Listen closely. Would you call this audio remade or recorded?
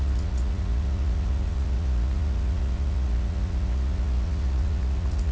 remade